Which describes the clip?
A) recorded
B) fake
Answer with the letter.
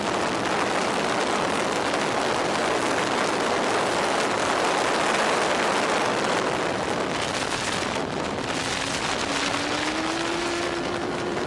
A